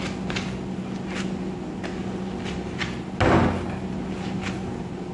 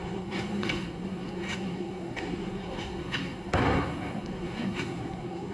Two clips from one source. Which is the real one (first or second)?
first